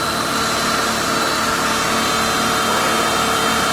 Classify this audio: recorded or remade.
recorded